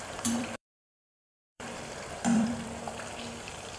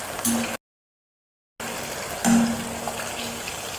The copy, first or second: first